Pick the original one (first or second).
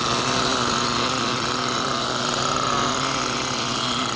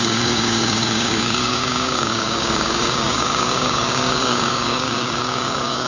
first